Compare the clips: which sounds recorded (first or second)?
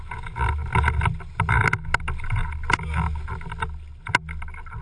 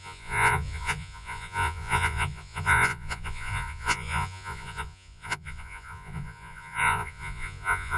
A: first